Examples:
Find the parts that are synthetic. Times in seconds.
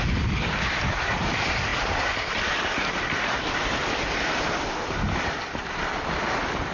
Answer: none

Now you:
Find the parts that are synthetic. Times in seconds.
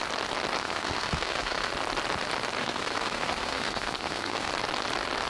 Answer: 0.6-1.7 (codec, SNAC); 2.6-4.5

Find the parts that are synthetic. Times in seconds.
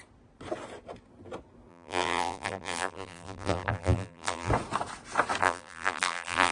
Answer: 1.7-4.5 (vocoder, BigVGAN v2); 5.4-6.5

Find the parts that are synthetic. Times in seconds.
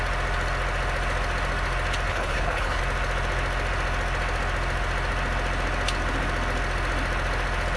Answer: 2.1-2.8 (codec, HILCodec)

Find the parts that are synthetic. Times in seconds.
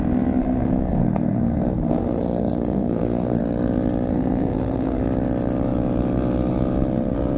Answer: 0.4-3.4 (codec, SNAC); 4.1-5.0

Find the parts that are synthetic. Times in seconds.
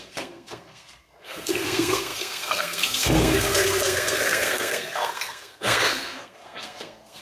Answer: 0.0-7.2 (codec, SNAC)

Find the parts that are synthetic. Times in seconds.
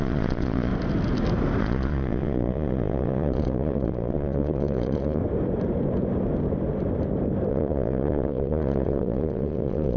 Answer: 0.0-0.7 (vocoder, Vocos); 1.6-5.2; 7.5-10.0